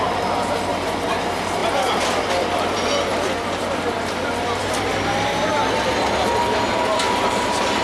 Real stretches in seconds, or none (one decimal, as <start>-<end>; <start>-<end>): 0.0-7.8